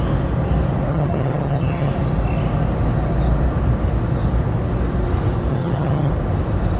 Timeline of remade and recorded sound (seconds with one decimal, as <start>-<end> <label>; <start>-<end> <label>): 0.0-0.9 recorded; 0.9-1.9 remade; 1.9-5.5 recorded; 5.5-6.1 remade; 6.1-6.8 recorded